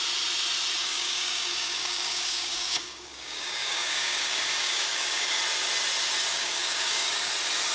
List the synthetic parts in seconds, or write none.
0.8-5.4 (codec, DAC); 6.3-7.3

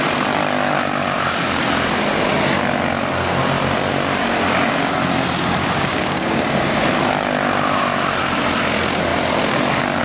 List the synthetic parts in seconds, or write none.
5.6-6.8 (codec, DAC)

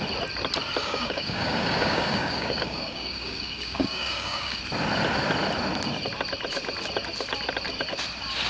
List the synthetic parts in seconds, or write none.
0.8-4.6 (codec, DAC)

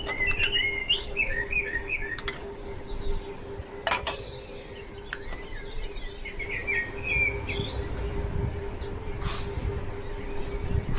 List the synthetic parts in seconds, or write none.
0.8-3.2 (codec, DAC)